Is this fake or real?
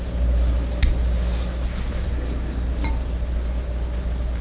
real